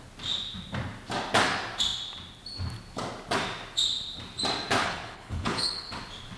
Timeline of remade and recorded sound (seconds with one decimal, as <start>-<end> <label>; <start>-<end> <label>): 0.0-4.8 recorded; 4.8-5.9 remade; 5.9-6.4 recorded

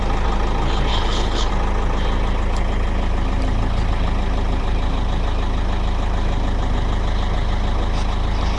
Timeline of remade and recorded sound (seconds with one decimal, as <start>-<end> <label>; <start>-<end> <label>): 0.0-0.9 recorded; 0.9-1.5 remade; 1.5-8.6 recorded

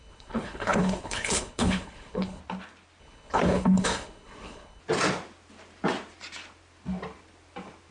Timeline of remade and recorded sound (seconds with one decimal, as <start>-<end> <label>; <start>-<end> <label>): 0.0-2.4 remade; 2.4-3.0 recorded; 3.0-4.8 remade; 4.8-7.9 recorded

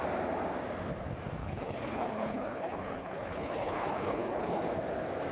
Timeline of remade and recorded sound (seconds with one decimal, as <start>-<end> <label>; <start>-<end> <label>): 0.0-1.4 recorded; 1.4-4.6 remade; 4.6-5.3 recorded